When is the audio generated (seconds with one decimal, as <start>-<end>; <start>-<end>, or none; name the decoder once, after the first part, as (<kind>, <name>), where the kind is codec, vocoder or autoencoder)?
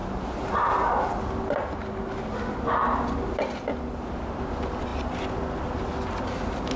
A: 0.0-0.9 (vocoder, BigVGAN v2)